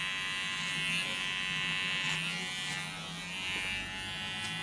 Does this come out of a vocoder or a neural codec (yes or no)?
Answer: no